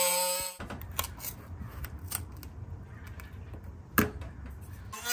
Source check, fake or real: real